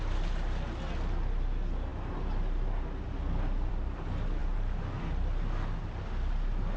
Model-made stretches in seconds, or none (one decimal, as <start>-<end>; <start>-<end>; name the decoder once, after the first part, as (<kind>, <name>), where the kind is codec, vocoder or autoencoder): none